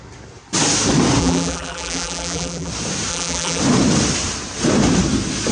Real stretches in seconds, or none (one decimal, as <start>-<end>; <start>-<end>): 0.0-1.2; 2.7-3.1; 3.6-5.5